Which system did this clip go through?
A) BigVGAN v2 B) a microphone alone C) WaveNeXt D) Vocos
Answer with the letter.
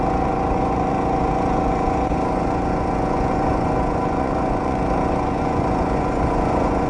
D